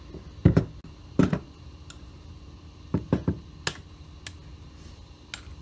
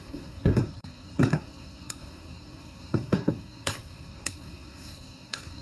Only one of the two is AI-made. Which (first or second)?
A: second